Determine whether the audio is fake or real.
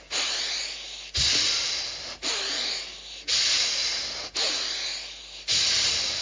real